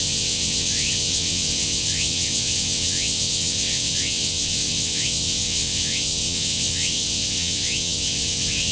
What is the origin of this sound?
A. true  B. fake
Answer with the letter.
B